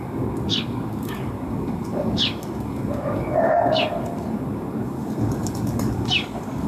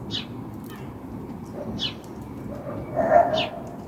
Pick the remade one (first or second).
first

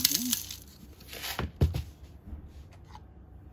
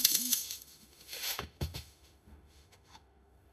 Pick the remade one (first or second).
second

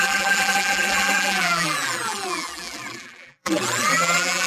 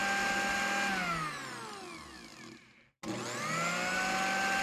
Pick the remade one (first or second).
first